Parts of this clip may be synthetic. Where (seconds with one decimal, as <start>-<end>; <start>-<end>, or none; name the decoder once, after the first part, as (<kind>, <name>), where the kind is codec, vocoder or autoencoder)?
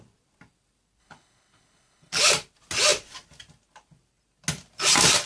1.0-2.2 (codec, HILCodec)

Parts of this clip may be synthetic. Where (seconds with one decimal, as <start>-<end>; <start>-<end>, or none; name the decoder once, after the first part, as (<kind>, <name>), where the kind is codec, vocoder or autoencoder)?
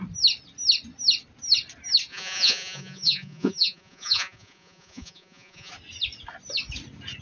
2.1-5.7 (vocoder, Vocos)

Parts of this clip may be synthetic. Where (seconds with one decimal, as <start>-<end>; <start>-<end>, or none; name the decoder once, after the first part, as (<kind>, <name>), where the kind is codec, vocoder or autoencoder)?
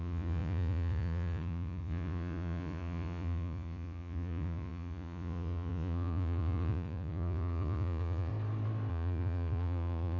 0.0-8.3 (vocoder, Vocos); 8.9-10.2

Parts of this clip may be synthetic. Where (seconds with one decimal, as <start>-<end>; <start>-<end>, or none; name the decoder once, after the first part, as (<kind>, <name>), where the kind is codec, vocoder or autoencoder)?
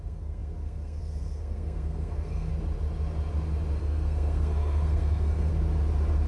0.0-2.5 (codec, SNAC); 3.8-5.5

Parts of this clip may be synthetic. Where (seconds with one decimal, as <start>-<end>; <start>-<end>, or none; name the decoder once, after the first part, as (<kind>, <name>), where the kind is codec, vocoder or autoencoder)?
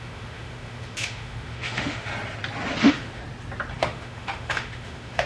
0.0-2.1 (autoencoder, DAC-VAE); 2.8-3.2; 3.8-5.3